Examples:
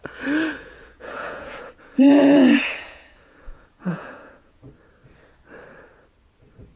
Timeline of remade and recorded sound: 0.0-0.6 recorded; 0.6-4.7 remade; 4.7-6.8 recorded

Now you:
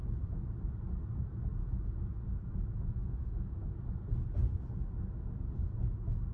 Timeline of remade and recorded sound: 0.0-1.5 recorded; 1.5-3.7 remade; 3.7-5.6 recorded; 5.6-6.3 remade